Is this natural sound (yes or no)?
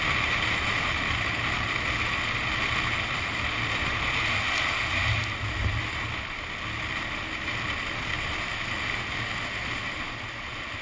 yes